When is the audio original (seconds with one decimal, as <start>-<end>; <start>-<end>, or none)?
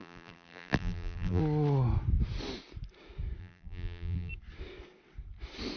1.4-3.4; 4.3-5.8